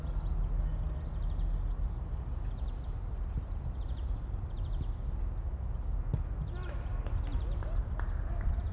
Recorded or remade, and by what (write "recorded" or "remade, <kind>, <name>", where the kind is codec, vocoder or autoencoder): recorded